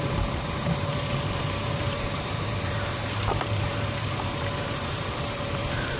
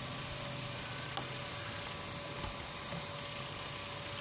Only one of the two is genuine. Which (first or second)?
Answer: second